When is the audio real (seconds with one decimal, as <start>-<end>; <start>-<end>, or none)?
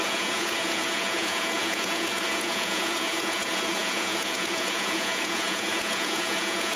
none